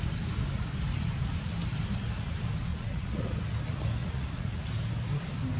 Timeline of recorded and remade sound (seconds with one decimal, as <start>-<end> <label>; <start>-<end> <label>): 0.0-2.7 recorded; 2.7-3.3 remade; 3.3-4.0 recorded; 4.0-4.6 remade; 4.6-5.6 recorded

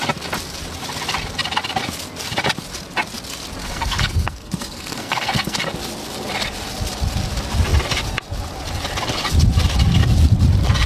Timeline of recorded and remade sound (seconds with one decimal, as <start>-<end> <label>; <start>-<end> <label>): 0.0-3.6 recorded; 3.6-5.6 remade; 5.6-10.9 recorded

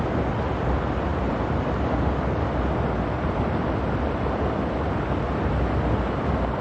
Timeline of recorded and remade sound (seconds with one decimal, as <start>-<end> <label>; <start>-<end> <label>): 0.0-6.6 recorded